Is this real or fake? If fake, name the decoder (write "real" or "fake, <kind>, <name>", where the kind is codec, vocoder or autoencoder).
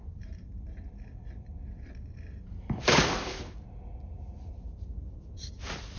fake, vocoder, BigVGAN v2